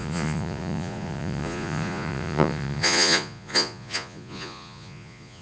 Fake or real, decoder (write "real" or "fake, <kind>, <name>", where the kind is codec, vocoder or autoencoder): fake, vocoder, Vocos